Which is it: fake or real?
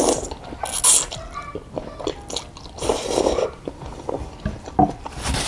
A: real